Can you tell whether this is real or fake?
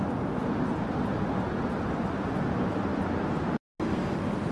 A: real